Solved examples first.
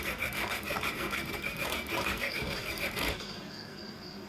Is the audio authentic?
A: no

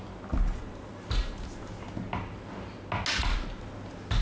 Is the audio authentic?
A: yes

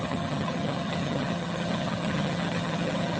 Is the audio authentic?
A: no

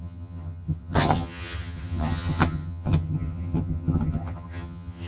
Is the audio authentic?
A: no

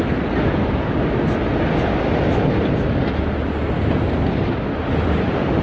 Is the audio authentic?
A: yes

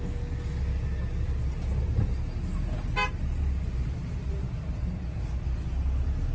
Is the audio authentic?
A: yes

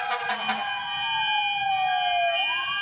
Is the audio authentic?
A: yes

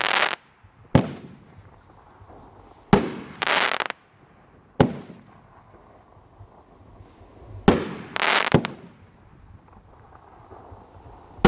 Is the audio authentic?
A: yes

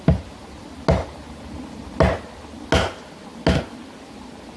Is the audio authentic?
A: yes